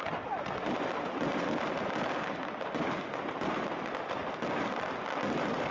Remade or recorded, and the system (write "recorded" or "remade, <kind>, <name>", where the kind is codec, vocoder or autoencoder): recorded